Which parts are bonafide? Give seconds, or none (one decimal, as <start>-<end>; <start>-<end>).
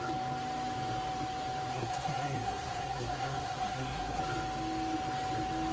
0.0-1.7; 4.2-5.7